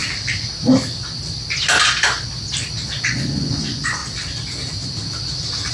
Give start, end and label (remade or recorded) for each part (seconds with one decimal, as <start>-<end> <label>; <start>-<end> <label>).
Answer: 0.0-3.0 recorded; 3.0-4.0 remade; 4.0-5.7 recorded